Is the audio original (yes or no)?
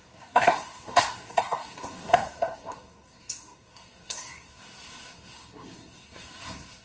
no